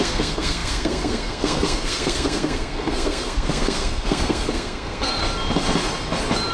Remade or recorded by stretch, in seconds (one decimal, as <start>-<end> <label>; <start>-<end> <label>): 0.0-5.2 remade; 5.2-6.5 recorded